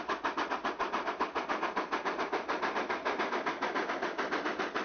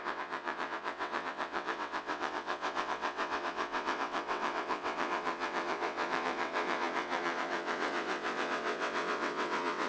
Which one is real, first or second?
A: first